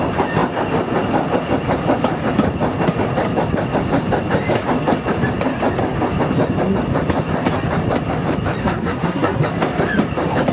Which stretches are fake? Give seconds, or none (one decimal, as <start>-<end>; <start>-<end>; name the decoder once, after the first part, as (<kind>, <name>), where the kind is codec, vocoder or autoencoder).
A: 8.6-9.5 (codec, SNAC)